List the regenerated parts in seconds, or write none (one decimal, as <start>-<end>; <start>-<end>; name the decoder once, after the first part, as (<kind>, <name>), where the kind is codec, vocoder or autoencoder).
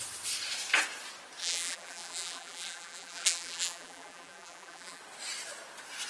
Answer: 1.4-5.0 (vocoder, BigVGAN v2)